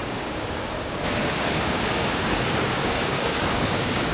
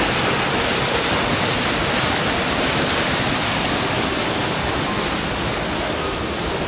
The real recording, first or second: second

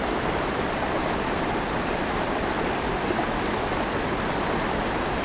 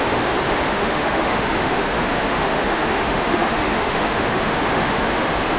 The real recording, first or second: first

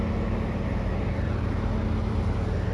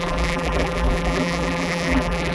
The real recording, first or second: first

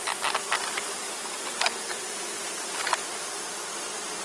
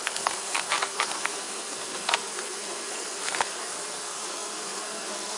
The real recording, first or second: first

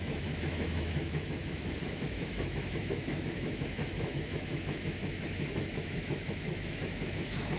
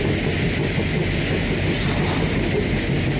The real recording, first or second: second